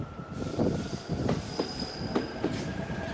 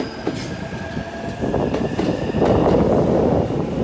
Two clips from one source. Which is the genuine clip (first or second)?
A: second